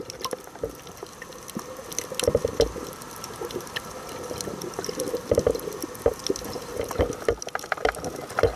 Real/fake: real